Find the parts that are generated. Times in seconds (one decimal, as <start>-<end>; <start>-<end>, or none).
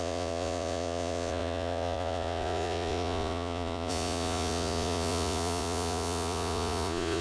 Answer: 0.0-7.2